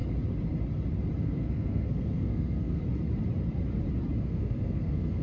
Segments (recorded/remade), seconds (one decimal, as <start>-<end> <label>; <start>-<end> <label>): 0.0-1.2 recorded; 1.2-2.8 remade; 2.8-4.2 recorded; 4.2-5.2 remade